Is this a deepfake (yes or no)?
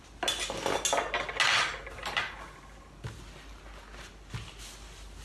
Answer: no